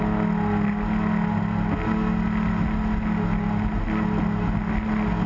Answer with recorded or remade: recorded